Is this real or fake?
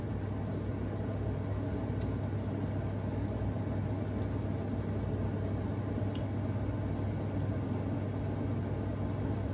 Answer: real